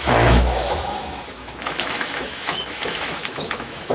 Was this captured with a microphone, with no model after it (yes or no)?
no